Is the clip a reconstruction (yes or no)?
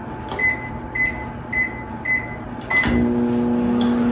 no